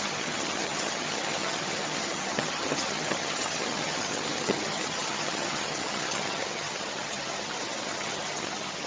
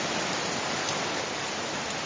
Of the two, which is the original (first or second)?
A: second